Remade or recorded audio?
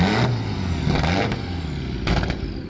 recorded